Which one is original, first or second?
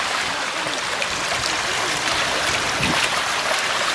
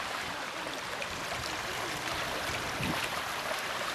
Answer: first